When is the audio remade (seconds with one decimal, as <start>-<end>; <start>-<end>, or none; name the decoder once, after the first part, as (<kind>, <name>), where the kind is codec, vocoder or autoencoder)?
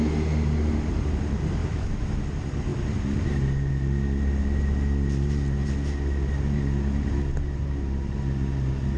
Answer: 1.6-2.2 (autoencoder, DAC-VAE)